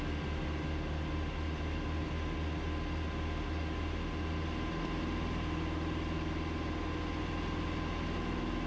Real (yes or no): yes